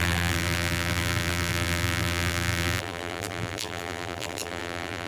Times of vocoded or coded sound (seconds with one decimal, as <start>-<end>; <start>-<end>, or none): 0.0-5.1